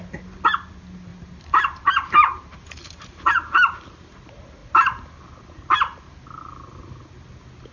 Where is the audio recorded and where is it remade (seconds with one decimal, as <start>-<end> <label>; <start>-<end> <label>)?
0.0-1.1 recorded; 1.1-3.3 remade; 3.3-7.7 recorded